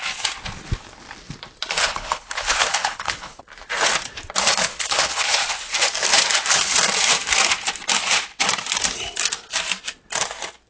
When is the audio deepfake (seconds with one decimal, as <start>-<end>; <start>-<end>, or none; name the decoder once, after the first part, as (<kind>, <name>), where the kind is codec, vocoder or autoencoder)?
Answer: 1.8-3.4 (codec, HILCodec); 4.7-5.7